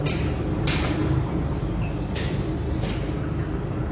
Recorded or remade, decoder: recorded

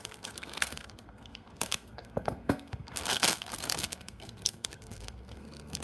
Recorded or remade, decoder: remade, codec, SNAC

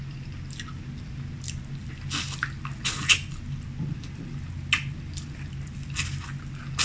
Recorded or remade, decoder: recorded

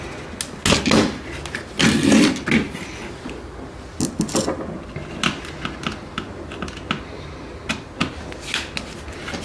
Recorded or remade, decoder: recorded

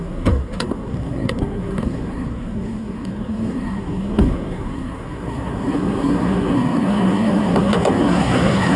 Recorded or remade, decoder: remade, codec, SNAC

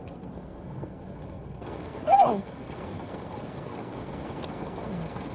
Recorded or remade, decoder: remade, codec, SNAC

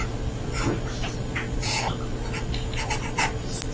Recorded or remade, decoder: recorded